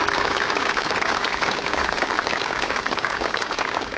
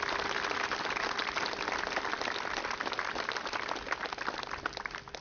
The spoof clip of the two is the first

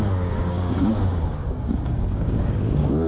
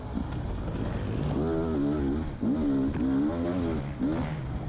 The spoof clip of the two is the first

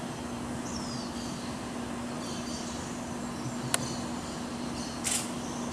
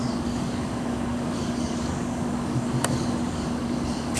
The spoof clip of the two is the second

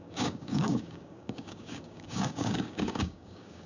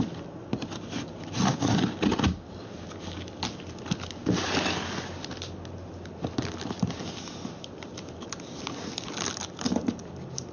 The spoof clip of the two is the first